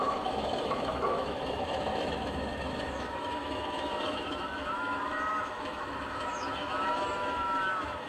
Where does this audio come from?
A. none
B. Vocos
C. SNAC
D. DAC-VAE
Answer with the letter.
D